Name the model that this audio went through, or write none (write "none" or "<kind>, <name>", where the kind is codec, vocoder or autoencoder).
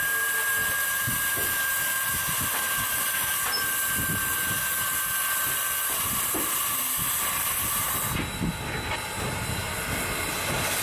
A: none